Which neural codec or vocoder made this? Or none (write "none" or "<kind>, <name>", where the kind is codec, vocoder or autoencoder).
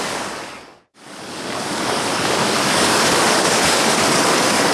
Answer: codec, DAC